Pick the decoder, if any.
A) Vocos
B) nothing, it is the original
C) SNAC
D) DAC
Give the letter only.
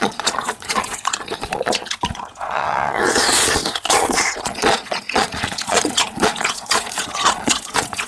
A